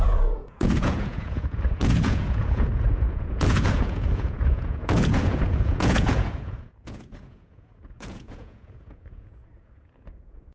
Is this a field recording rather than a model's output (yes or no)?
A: no